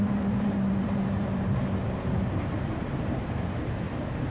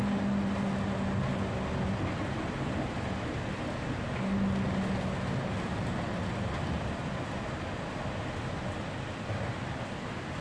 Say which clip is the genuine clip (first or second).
second